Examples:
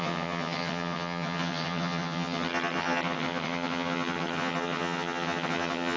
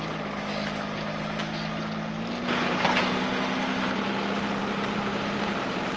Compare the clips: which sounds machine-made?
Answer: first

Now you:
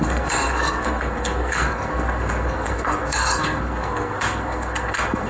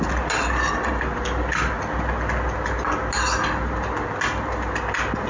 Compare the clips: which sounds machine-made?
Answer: first